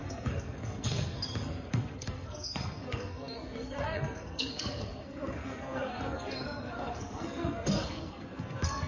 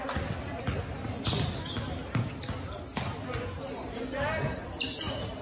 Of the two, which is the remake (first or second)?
first